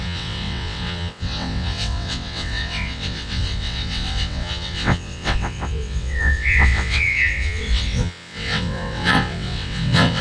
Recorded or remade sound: remade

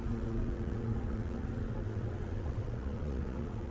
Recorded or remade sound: remade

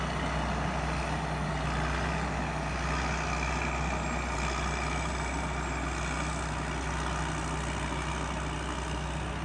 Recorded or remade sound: recorded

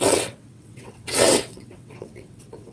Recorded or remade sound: remade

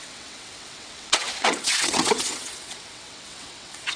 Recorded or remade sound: remade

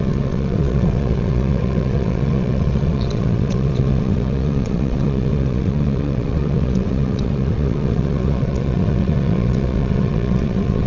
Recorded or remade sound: remade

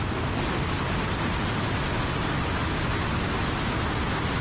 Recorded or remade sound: recorded